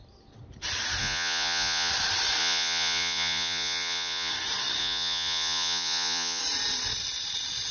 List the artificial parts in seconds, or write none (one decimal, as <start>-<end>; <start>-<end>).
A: 1.0-1.9; 2.4-4.3; 4.8-6.4